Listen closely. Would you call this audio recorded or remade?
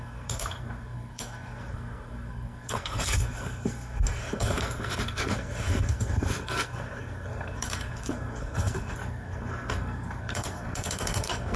remade